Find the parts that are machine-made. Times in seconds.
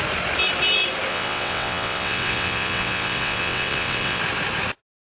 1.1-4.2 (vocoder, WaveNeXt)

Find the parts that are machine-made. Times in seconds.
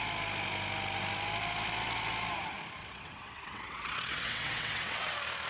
2.8-5.1 (vocoder, WaveNeXt)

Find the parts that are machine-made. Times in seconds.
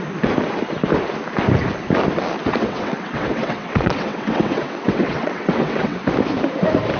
2.4-6.1 (vocoder, WaveNeXt)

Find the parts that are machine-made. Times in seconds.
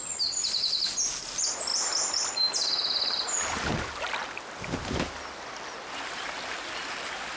none